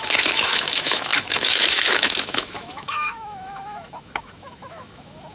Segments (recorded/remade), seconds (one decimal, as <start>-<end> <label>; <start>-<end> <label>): 0.0-5.3 remade